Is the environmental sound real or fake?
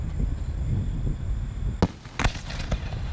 real